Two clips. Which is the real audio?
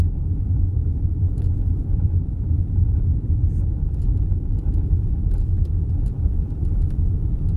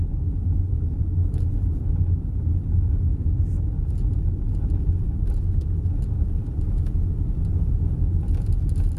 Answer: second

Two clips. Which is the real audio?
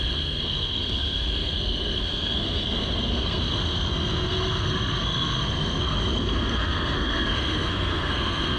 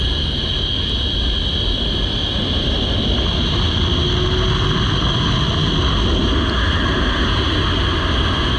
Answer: second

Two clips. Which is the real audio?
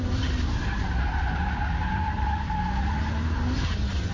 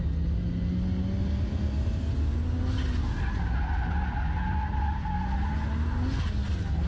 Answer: second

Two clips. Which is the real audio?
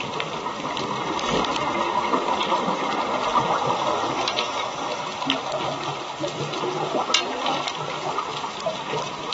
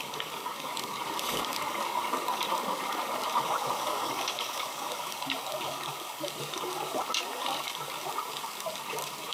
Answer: first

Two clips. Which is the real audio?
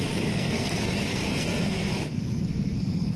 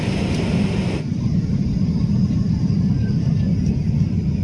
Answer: second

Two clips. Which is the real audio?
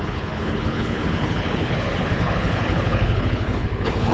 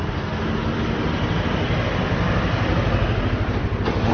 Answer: second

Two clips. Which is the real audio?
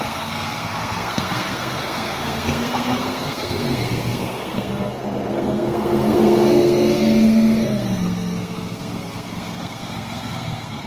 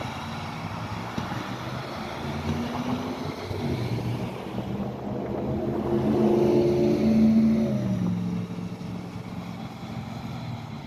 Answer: second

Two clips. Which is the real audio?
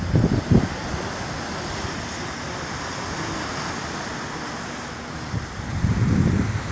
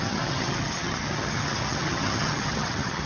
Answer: first